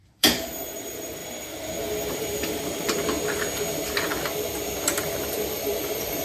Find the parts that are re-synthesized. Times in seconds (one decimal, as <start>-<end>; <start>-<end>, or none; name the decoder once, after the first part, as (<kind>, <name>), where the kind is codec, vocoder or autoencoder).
0.0-1.2 (vocoder, BigVGAN v2); 2.1-4.3; 4.8-6.2